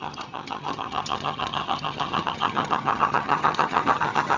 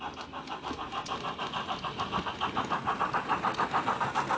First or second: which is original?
second